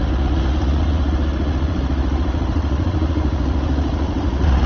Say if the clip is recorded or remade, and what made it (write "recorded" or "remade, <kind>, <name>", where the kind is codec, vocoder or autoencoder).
remade, vocoder, Vocos